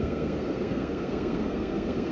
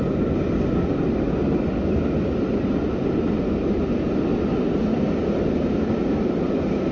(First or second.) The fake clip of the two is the first